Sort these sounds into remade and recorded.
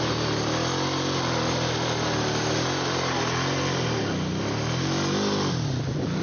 recorded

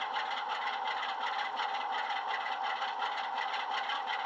recorded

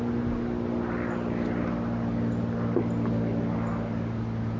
recorded